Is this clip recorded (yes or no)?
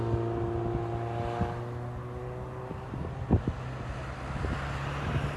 yes